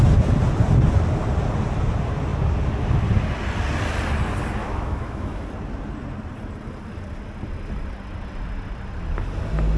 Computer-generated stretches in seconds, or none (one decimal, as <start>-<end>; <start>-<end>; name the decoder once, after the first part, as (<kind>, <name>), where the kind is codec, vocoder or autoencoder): 4.6-5.4 (autoencoder, DAC-VAE)